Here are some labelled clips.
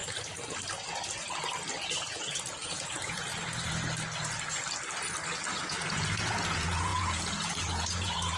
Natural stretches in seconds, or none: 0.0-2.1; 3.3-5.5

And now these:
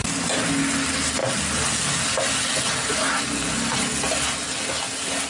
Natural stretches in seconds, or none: 0.0-5.3

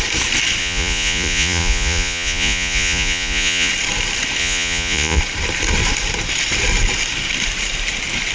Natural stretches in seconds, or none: 0.0-0.6; 3.7-4.4; 5.2-8.3